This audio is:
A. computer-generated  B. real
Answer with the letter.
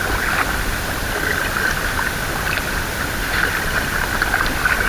A